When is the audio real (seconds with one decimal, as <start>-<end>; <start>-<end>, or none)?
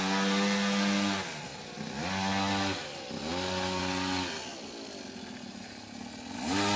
0.0-6.8